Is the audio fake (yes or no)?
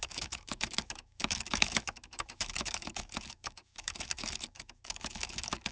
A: yes